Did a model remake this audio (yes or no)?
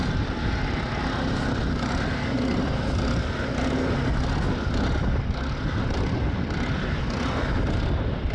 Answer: no